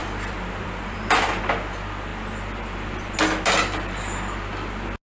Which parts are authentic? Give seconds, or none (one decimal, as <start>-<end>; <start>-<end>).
1.4-5.1